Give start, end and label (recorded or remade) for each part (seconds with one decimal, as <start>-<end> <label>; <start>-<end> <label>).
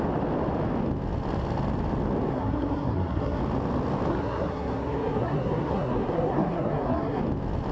0.0-2.3 recorded; 2.3-3.4 remade; 3.4-4.1 recorded; 4.1-7.2 remade; 7.2-7.7 recorded